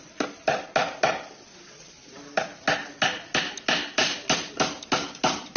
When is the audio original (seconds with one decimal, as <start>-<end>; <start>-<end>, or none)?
0.0-5.6